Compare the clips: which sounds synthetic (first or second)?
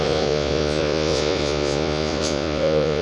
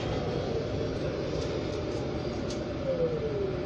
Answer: first